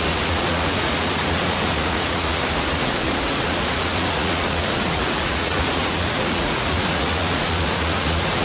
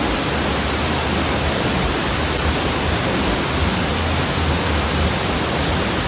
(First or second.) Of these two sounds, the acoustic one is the second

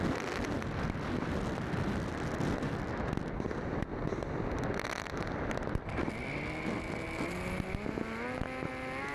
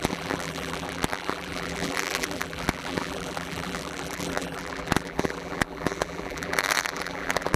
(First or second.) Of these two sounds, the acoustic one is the first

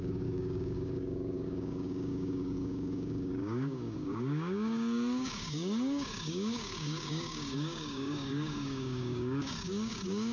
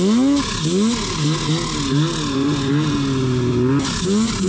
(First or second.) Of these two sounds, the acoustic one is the second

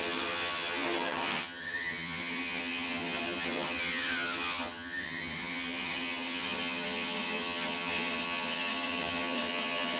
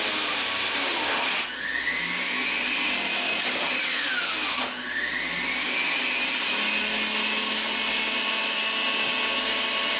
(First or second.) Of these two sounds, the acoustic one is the second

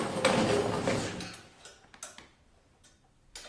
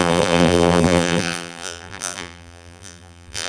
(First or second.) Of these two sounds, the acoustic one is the first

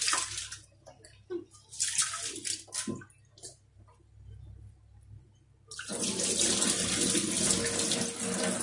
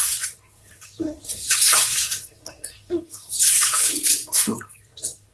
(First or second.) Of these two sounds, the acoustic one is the first